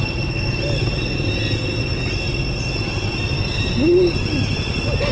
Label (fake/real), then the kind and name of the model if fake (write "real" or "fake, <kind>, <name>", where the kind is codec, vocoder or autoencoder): real